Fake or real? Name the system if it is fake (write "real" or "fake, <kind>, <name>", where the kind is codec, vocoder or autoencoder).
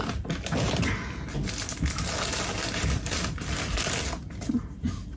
real